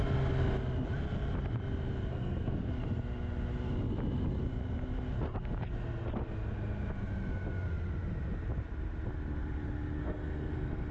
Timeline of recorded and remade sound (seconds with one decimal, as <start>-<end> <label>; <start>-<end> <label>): 0.0-2.1 recorded; 2.1-2.7 remade; 2.7-10.0 recorded; 10.0-10.9 remade